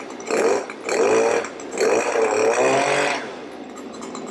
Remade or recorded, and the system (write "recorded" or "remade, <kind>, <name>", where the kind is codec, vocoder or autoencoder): recorded